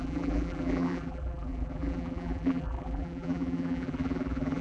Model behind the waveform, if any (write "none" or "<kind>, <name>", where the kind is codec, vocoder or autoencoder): vocoder, BigVGAN v2